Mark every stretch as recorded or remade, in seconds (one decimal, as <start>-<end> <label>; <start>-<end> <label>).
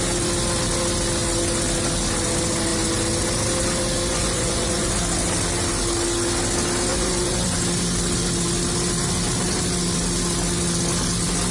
0.0-4.1 recorded; 4.1-4.9 remade; 4.9-6.9 recorded; 6.9-7.6 remade; 7.6-11.5 recorded